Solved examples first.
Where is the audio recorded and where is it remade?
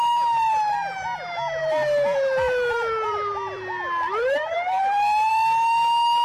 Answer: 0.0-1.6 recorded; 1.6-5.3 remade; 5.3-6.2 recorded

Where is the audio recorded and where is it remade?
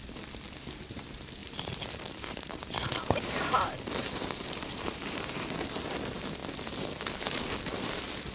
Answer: 0.0-1.4 recorded; 1.4-5.5 remade; 5.5-8.3 recorded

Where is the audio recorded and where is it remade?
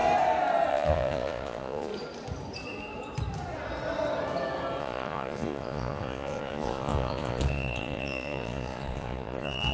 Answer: 0.0-0.7 recorded; 0.7-1.9 remade; 1.9-4.8 recorded; 4.8-9.7 remade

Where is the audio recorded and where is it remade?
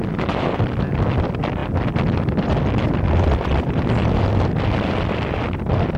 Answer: 0.0-6.0 recorded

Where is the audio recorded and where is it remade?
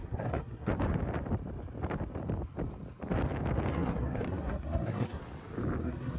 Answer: 0.0-0.7 remade; 0.7-3.7 recorded; 3.7-5.2 remade; 5.2-5.8 recorded; 5.8-6.2 remade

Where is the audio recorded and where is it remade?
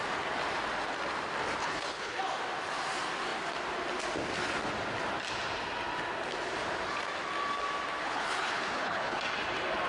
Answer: 0.0-1.6 recorded; 1.6-2.2 remade; 2.2-8.0 recorded; 8.0-9.2 remade; 9.2-9.9 recorded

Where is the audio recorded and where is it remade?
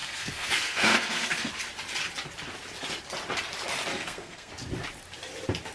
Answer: 0.0-1.5 remade; 1.5-3.9 recorded; 3.9-4.5 remade; 4.5-5.7 recorded